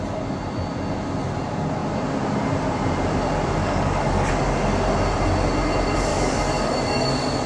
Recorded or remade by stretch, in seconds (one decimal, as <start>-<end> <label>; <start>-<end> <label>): 0.0-3.6 recorded; 3.6-4.3 remade; 4.3-6.1 recorded; 6.1-7.1 remade; 7.1-7.5 recorded